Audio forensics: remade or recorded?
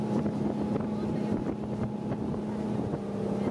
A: recorded